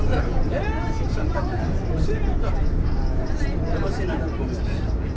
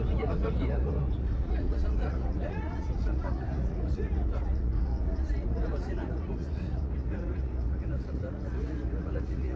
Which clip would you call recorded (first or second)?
first